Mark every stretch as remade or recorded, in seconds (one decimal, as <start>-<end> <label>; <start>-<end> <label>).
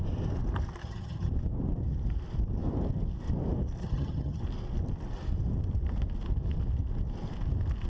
0.0-0.8 recorded; 0.8-1.3 remade; 1.3-3.8 recorded; 3.8-4.4 remade; 4.4-7.9 recorded